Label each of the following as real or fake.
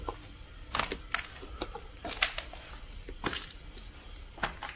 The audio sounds real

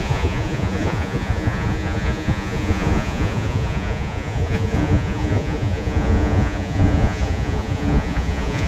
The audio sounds fake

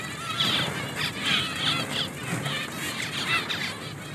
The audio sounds real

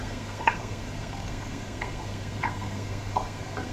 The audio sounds fake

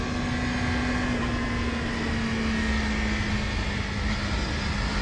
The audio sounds real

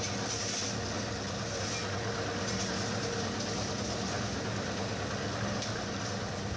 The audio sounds real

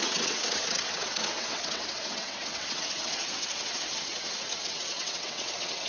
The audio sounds fake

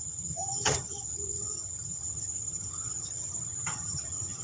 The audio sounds fake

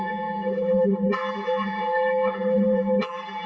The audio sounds fake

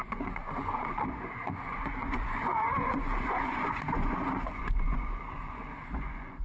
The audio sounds fake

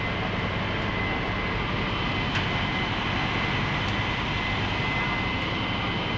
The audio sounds real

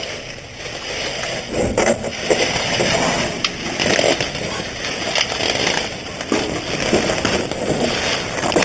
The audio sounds real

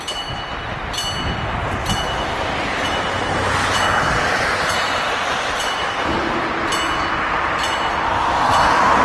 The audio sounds real